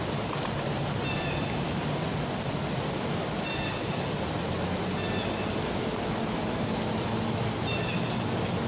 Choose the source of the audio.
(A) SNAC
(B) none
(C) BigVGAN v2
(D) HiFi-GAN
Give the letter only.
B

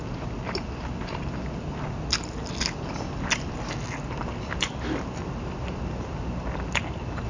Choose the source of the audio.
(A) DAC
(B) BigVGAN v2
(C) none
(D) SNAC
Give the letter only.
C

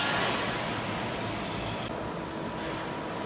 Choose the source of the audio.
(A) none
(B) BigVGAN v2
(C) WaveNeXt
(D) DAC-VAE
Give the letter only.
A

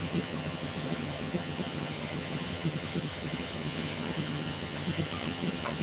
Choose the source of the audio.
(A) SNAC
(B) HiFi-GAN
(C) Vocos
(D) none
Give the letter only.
B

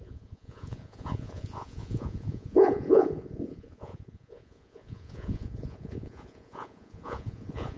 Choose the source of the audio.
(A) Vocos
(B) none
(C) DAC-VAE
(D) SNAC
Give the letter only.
A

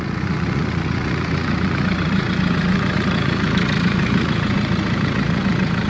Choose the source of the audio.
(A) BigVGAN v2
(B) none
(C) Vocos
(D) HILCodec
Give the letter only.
C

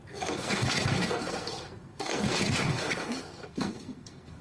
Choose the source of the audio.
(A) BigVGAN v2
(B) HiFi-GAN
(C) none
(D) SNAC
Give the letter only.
D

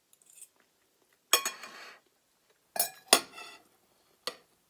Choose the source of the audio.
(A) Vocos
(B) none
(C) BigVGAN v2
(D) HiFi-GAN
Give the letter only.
B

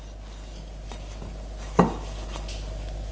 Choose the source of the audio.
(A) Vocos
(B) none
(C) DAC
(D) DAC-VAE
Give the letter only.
B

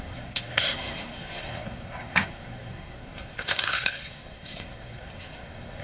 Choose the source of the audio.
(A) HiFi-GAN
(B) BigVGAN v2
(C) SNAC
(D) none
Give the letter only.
C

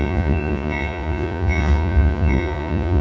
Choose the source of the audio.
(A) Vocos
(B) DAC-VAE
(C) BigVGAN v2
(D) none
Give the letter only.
A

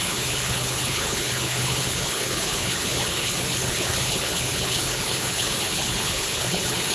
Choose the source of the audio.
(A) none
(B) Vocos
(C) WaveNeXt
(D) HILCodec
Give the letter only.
D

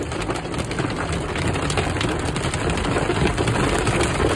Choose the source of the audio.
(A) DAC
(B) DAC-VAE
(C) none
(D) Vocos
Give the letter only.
C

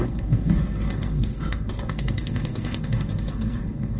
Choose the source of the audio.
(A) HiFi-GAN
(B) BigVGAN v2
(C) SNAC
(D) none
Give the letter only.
C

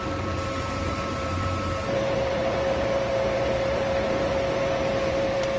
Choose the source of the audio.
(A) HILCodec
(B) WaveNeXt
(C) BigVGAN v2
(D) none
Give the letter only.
C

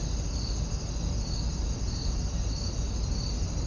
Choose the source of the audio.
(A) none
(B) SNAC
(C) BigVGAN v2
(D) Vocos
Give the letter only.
A